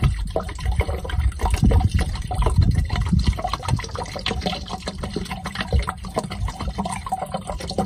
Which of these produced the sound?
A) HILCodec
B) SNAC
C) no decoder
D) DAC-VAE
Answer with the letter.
C